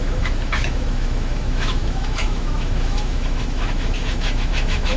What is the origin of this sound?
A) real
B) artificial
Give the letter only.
B